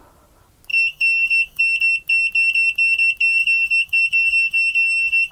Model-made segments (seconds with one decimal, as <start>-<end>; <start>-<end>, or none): 0.7-1.6; 3.4-5.3